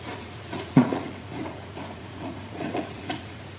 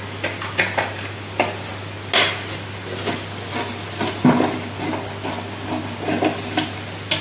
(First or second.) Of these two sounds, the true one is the second